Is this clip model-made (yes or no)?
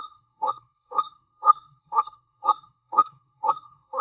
yes